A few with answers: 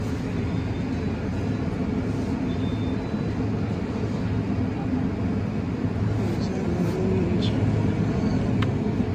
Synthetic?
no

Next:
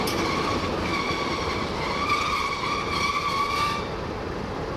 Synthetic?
yes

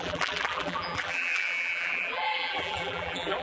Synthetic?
yes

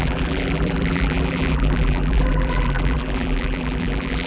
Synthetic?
yes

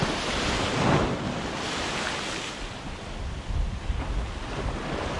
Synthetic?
no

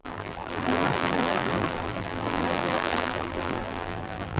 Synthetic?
yes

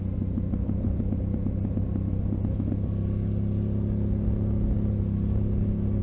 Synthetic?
no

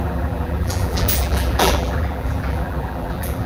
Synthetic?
yes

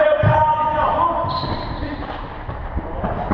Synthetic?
yes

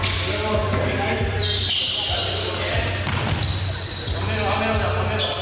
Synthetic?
no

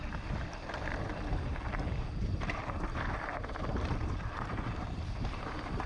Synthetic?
yes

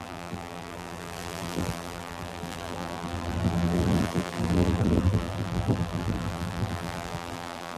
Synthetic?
yes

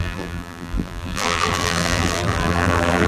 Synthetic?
yes